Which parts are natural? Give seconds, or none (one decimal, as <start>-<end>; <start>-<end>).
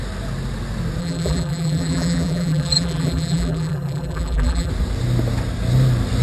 0.0-1.0; 4.7-6.2